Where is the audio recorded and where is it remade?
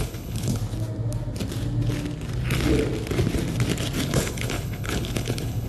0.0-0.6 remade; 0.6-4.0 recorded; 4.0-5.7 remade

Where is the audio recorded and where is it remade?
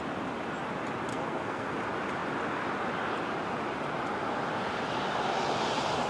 0.0-1.1 recorded; 1.1-1.8 remade; 1.8-6.1 recorded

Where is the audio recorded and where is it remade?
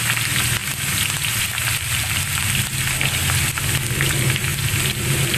0.0-5.4 recorded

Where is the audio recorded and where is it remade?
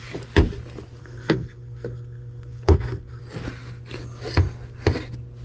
0.0-1.0 recorded; 1.0-3.2 remade; 3.2-5.4 recorded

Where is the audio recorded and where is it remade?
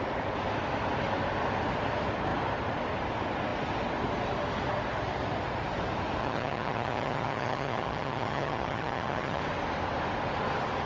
0.0-6.2 recorded; 6.2-9.4 remade; 9.4-10.9 recorded